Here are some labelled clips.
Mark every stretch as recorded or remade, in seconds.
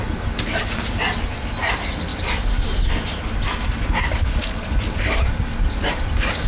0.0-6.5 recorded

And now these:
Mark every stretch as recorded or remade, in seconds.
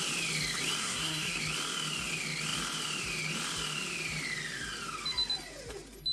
0.0-0.8 recorded; 0.8-1.4 remade; 1.4-6.1 recorded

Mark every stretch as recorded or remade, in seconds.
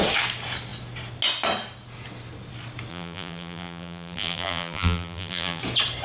0.0-2.9 recorded; 2.9-5.6 remade; 5.6-6.0 recorded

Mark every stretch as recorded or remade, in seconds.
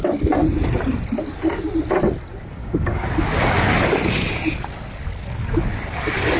0.0-2.6 recorded; 2.6-3.1 remade; 3.1-6.4 recorded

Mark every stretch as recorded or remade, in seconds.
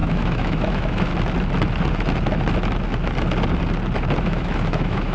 0.0-1.1 remade; 1.1-4.2 recorded; 4.2-5.1 remade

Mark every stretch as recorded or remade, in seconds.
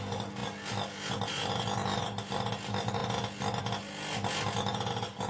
0.0-5.3 recorded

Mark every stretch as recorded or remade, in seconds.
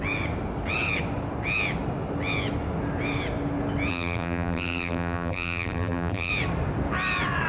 0.0-3.9 recorded; 3.9-6.3 remade; 6.3-7.5 recorded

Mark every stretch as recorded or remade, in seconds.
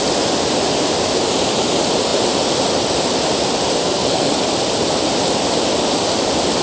0.0-3.8 recorded; 3.8-4.3 remade; 4.3-6.6 recorded